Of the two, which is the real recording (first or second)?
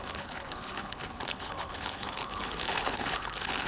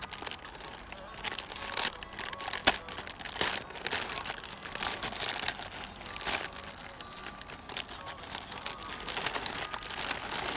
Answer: second